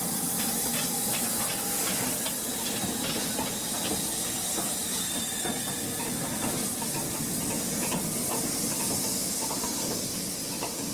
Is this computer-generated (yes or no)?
no